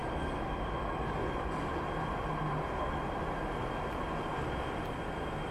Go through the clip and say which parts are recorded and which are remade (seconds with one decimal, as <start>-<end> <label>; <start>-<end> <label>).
0.0-5.5 recorded